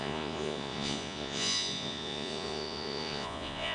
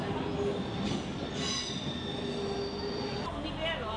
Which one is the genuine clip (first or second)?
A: second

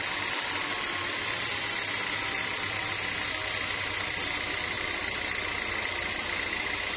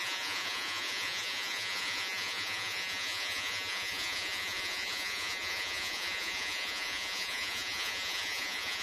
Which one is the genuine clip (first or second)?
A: first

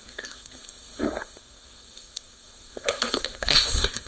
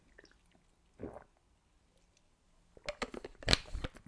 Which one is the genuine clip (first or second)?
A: second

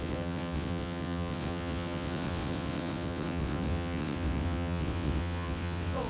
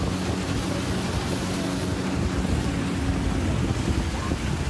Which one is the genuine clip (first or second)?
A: second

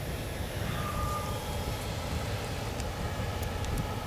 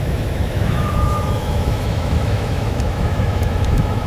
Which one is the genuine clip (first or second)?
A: first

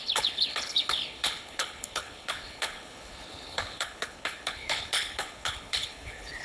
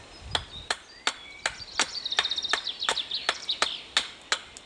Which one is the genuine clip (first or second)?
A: second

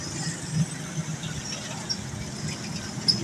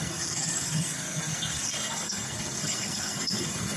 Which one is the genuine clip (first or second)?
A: first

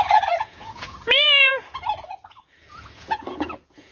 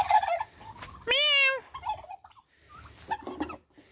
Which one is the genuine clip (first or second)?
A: second